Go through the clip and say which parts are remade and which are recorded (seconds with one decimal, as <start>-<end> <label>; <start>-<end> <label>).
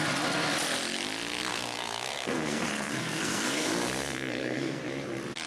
0.0-1.5 recorded; 1.5-4.8 remade; 4.8-5.5 recorded